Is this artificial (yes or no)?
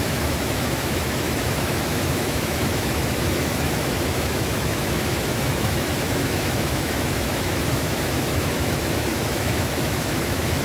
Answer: yes